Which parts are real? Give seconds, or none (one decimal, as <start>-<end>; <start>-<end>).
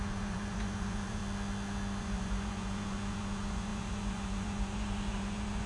1.2-2.0